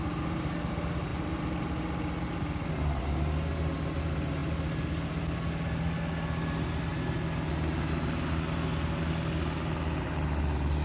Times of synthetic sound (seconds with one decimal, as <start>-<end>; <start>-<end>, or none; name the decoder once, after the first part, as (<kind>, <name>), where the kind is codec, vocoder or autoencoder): none